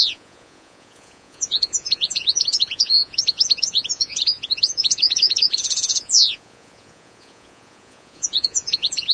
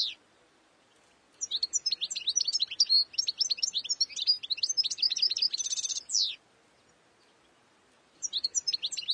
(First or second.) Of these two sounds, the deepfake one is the first